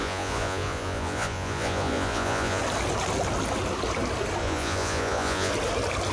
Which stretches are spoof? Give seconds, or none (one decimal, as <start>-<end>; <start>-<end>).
0.0-2.6; 4.4-5.5